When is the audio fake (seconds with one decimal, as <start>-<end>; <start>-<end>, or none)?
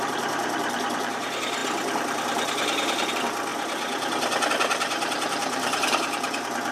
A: 0.0-3.5; 4.5-6.7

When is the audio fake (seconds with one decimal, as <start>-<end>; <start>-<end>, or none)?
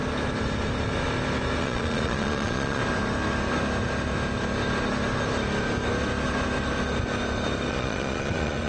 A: 1.6-2.8; 7.7-8.7